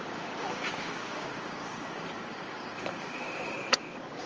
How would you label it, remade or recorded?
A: remade